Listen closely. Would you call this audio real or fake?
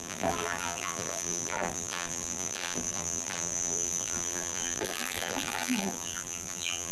fake